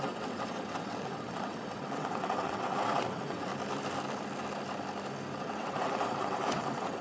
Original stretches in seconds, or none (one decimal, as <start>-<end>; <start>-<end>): 3.5-5.4